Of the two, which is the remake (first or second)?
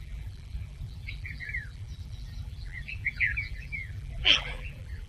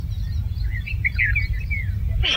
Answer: first